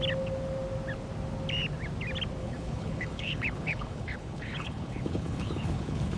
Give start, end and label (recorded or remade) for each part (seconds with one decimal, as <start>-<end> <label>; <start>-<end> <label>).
0.0-2.4 recorded; 2.4-6.2 remade